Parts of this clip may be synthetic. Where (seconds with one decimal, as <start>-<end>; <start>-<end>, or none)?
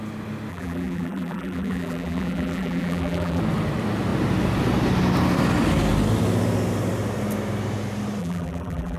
0.5-3.4; 8.2-9.0